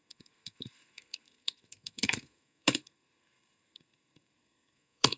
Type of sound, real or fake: fake